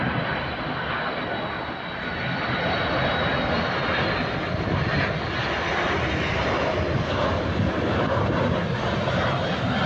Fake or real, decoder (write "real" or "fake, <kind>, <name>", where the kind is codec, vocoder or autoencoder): real